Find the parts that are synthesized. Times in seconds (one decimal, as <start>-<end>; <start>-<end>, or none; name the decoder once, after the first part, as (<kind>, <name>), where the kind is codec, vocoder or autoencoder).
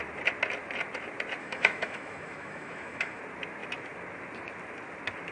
1.4-3.2 (autoencoder, DAC-VAE)